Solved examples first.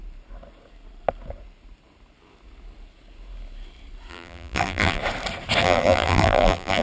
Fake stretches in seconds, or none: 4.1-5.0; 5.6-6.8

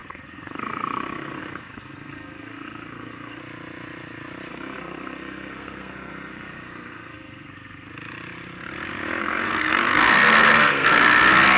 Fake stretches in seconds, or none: 0.0-3.4; 4.5-7.9; 9.2-11.6

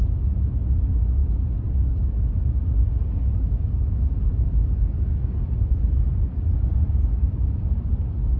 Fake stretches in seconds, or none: none

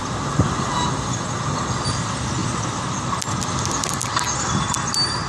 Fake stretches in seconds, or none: none

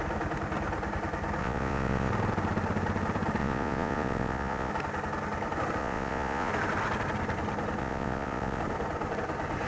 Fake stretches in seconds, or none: 1.4-2.1; 3.4-4.7; 5.8-6.5; 7.8-8.6

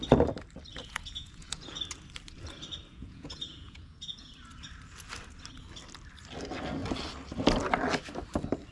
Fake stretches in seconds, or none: 0.7-1.8; 2.9-4.3